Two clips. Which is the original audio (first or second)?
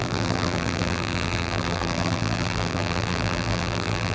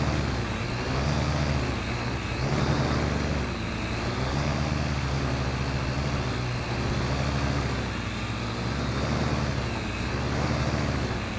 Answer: second